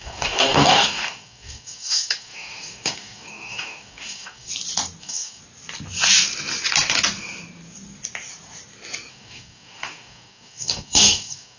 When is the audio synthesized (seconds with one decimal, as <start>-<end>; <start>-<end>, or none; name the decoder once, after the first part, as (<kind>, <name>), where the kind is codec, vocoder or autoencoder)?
0.0-4.5 (codec, DAC); 5.0-5.4; 9.1-11.6